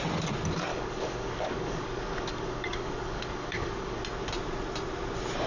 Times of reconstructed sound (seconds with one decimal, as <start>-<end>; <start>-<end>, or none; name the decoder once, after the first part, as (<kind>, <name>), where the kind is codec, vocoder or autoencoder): 0.7-4.0 (codec, DAC)